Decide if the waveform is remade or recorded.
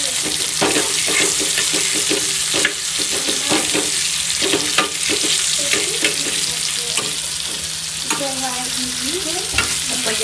recorded